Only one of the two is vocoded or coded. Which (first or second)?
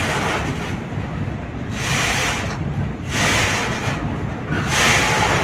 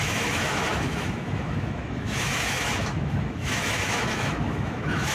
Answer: second